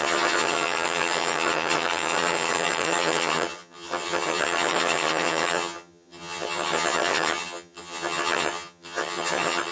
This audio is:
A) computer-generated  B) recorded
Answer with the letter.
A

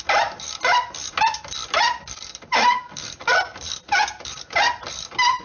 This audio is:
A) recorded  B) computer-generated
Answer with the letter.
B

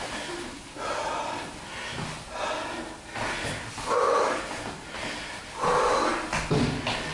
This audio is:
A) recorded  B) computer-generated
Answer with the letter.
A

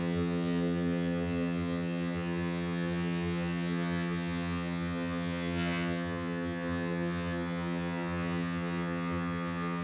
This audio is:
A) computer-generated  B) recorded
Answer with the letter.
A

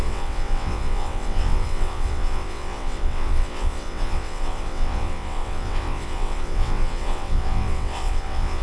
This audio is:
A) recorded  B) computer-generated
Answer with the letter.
B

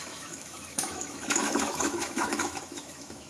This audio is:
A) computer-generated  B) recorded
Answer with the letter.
A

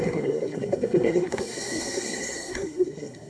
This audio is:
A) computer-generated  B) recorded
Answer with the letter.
A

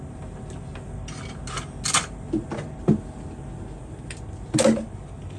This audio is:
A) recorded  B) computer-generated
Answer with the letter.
A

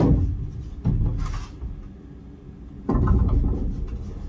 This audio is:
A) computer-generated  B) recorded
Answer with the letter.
B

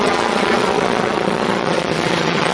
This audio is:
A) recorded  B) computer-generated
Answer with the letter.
B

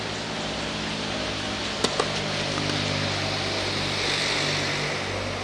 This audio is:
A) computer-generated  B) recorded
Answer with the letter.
B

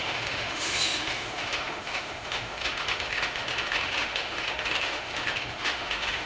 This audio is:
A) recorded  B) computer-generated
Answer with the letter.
B